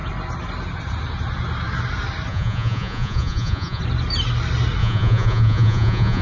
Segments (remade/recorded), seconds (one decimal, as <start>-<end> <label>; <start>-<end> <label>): 0.0-2.3 recorded; 2.3-3.8 remade; 3.8-4.8 recorded; 4.8-6.2 remade